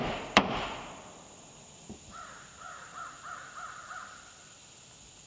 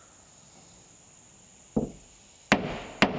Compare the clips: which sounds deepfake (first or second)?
first